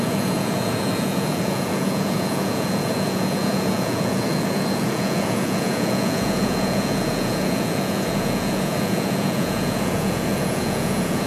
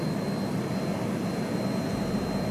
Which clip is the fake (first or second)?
first